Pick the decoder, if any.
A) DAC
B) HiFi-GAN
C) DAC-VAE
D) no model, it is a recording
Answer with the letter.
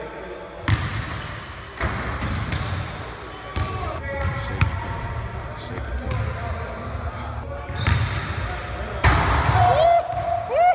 D